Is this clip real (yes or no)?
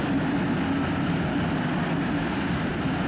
yes